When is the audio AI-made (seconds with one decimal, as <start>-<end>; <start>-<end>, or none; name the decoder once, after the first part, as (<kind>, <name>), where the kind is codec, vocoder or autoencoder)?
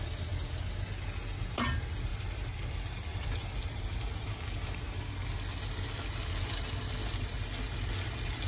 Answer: 2.1-4.3 (vocoder, BigVGAN v2); 7.0-8.5